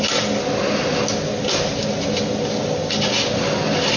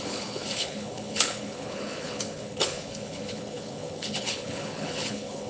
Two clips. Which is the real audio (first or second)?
first